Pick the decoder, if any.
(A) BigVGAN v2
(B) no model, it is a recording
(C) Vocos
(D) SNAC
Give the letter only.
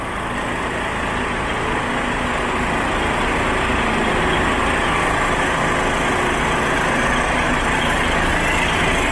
B